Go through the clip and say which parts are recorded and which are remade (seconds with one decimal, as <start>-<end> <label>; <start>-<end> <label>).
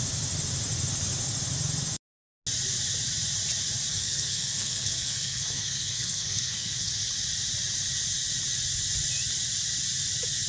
0.0-3.9 recorded; 3.9-6.9 remade; 6.9-10.5 recorded